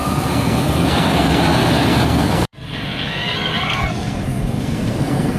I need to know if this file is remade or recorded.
remade